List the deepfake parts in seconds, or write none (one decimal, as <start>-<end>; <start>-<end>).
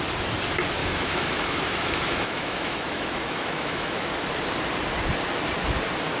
0.8-4.1